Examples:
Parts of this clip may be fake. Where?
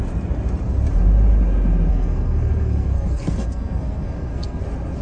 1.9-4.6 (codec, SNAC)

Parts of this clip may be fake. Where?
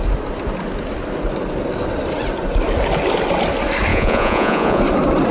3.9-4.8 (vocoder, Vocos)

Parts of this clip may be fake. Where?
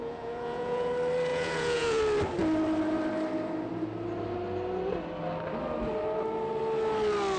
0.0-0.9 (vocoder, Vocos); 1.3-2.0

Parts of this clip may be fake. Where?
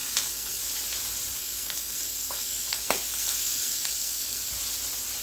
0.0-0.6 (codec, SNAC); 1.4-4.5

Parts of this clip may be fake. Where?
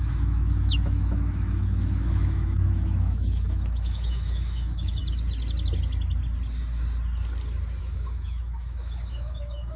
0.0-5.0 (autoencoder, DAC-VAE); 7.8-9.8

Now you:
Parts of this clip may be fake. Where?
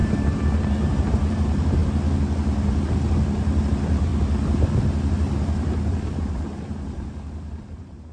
0.0-1.8 (vocoder, BigVGAN v2); 3.6-4.1; 5.1-8.1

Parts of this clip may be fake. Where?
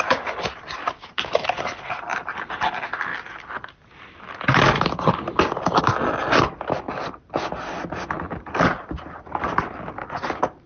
none